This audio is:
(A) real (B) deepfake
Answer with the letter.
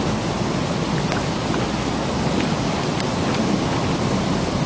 A